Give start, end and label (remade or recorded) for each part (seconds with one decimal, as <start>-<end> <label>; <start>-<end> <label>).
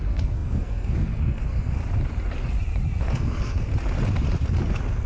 0.0-1.8 remade; 1.8-3.0 recorded; 3.0-3.7 remade; 3.7-5.1 recorded